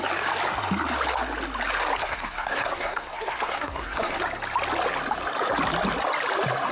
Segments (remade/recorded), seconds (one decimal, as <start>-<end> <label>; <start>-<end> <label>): 0.0-2.0 recorded; 2.0-4.2 remade; 4.2-6.7 recorded